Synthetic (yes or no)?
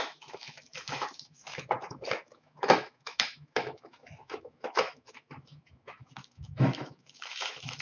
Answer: yes